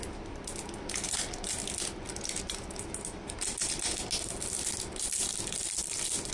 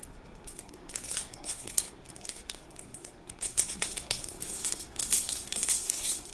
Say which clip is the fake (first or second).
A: second